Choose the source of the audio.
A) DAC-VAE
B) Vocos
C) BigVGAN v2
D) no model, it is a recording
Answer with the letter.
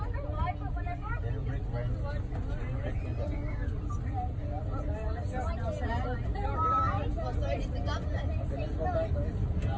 D